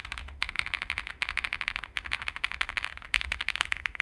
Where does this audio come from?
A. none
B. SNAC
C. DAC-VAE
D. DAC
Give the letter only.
C